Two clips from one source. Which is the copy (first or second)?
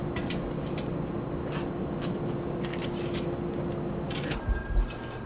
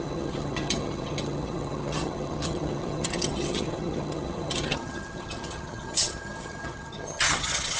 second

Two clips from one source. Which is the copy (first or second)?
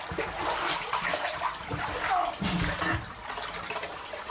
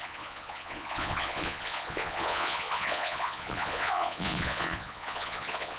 second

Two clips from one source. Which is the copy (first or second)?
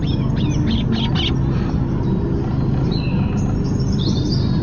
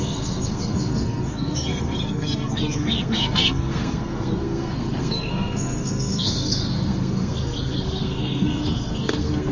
second